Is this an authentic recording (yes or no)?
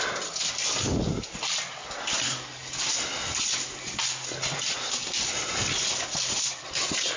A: yes